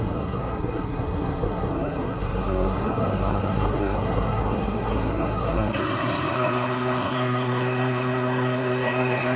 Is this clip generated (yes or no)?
yes